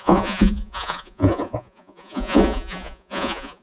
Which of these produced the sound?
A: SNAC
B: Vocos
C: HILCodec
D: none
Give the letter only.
B